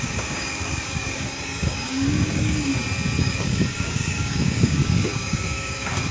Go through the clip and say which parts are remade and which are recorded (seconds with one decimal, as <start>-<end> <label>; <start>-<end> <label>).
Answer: 0.0-2.7 remade; 2.7-3.2 recorded; 3.2-6.1 remade